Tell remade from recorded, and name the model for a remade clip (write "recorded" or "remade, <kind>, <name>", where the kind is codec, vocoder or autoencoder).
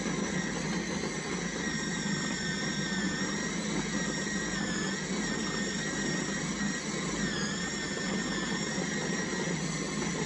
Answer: recorded